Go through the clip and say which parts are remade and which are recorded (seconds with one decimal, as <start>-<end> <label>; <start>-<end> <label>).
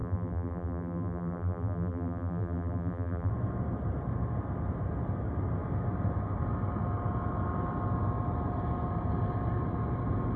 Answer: 0.0-3.3 remade; 3.3-10.4 recorded